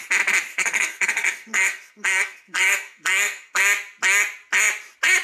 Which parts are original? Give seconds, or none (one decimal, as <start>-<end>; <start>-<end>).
0.0-0.5; 3.6-5.2